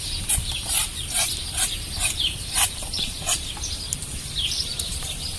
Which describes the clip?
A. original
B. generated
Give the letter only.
B